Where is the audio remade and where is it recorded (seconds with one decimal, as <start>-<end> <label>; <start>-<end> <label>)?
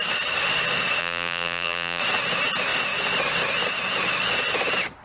0.0-1.0 recorded; 1.0-2.0 remade; 2.0-5.0 recorded